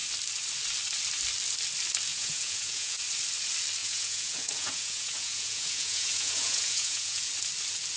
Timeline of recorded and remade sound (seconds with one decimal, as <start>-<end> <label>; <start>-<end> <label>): 0.0-2.1 recorded; 2.1-3.0 remade; 3.0-3.8 recorded; 3.8-7.3 remade; 7.3-8.0 recorded